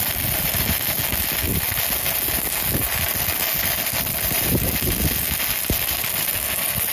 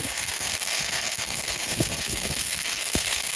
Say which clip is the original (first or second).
first